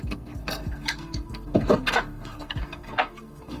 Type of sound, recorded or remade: remade